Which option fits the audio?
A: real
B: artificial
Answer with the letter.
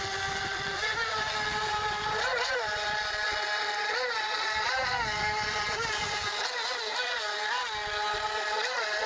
A